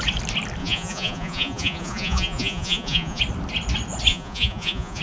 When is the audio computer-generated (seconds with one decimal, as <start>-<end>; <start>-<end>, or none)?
0.6-3.2; 4.1-5.0